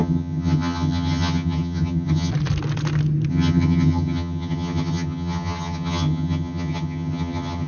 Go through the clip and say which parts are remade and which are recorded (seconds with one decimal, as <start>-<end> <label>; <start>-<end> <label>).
0.0-2.3 remade; 2.3-3.3 recorded; 3.3-7.7 remade